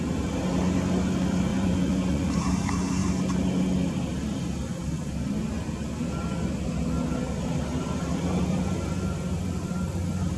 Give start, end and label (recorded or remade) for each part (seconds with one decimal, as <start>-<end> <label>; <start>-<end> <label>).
0.0-1.5 recorded; 1.5-2.4 remade; 2.4-10.4 recorded